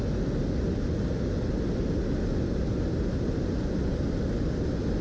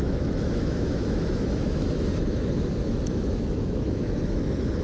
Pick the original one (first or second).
first